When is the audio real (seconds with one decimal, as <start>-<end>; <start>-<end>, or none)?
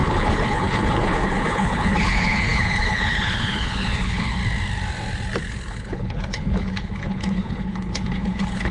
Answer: 4.4-5.4